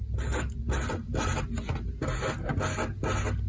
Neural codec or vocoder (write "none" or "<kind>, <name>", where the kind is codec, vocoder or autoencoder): none